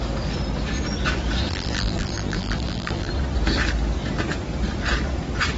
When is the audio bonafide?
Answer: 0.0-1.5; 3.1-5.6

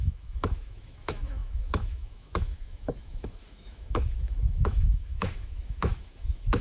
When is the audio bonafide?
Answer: none

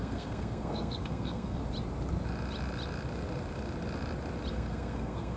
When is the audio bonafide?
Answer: 1.6-4.5

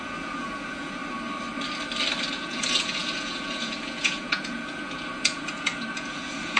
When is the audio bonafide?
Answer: 1.0-2.3